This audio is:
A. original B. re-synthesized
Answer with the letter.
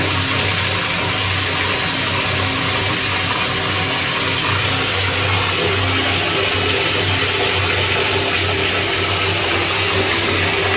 A